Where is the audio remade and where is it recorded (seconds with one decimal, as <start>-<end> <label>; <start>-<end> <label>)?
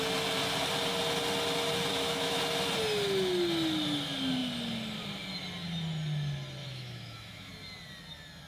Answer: 0.0-1.9 recorded; 1.9-2.4 remade; 2.4-6.6 recorded; 6.6-7.5 remade; 7.5-8.5 recorded